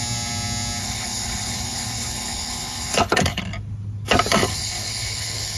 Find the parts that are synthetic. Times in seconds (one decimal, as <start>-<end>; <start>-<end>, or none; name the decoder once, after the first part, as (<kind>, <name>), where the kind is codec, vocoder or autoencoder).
0.8-3.4 (codec, HILCodec); 4.4-5.6